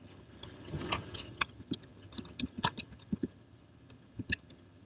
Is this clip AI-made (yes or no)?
yes